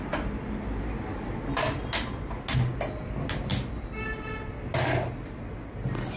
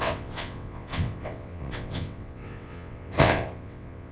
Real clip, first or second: first